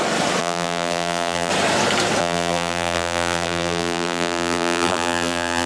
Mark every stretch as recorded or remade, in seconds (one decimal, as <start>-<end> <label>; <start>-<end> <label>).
0.0-0.4 recorded; 0.4-1.5 remade; 1.5-2.2 recorded; 2.2-5.7 remade